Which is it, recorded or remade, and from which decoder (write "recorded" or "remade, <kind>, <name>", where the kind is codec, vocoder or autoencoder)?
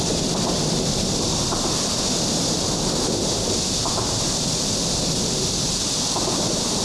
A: recorded